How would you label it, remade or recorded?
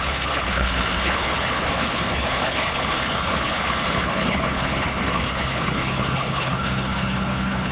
remade